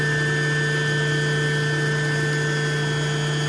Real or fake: real